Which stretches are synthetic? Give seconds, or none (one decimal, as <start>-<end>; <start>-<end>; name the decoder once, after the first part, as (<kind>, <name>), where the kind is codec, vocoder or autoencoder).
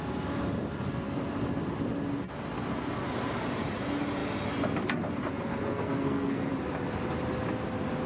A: 5.7-6.5 (codec, SNAC)